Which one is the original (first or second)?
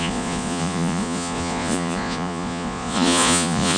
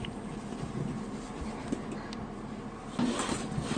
second